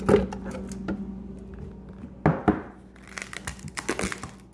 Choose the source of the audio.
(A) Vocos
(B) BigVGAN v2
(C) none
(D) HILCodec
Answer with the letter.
C